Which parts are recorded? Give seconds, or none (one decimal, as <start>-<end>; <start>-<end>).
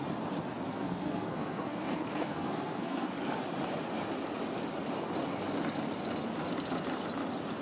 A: 0.0-0.7; 3.1-7.6